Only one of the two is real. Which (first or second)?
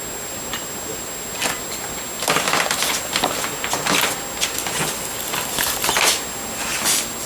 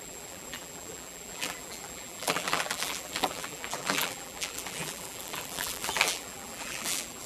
first